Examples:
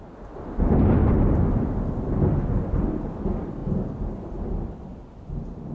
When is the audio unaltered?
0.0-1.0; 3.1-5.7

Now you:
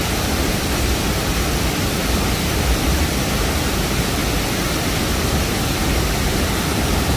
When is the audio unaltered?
2.0-3.1; 4.2-6.1

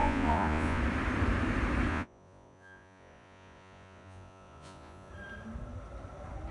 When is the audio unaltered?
0.8-1.9; 5.1-6.5

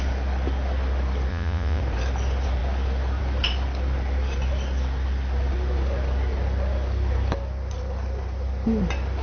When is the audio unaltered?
0.0-1.3; 1.8-9.2

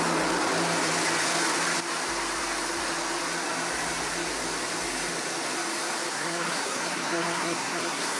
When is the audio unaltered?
0.0-6.1

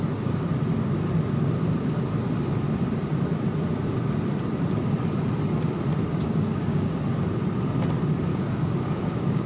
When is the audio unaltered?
0.0-6.1; 7.0-8.3